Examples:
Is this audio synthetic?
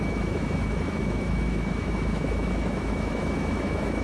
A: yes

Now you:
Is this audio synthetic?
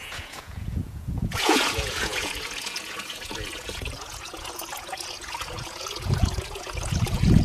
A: yes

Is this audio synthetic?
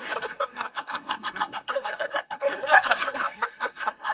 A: yes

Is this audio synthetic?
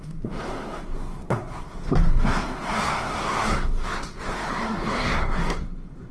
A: yes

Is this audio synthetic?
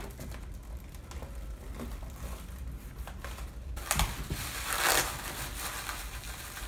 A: no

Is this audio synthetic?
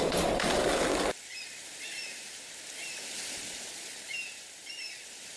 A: yes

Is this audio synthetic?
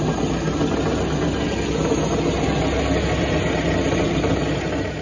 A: no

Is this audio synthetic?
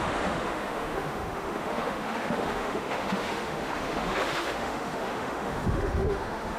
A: yes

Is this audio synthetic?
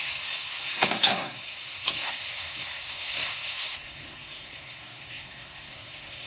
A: yes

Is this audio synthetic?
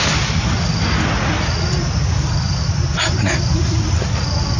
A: no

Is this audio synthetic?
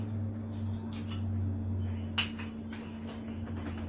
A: no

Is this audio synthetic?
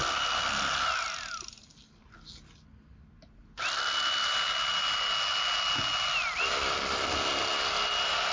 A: no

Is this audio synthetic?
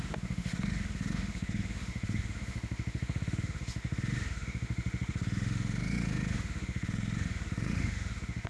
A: yes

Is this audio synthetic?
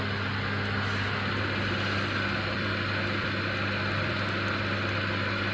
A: yes